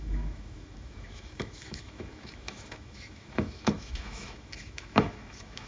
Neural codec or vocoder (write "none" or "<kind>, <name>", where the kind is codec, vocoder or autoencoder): autoencoder, DAC-VAE